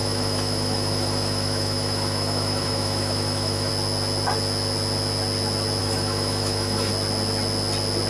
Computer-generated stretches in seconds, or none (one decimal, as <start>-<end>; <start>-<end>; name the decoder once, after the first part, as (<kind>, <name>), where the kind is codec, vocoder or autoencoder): 0.0-3.7 (autoencoder, DAC-VAE); 5.8-6.9